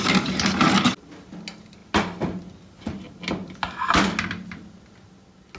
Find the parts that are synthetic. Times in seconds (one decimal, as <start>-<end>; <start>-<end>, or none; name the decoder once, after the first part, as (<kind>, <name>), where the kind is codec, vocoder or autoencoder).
none